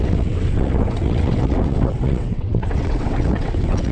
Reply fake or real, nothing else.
fake